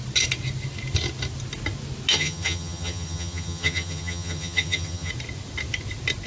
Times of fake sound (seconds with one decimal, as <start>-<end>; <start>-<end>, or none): 2.1-5.1